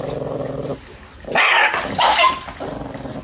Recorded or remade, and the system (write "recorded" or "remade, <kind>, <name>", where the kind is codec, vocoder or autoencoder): recorded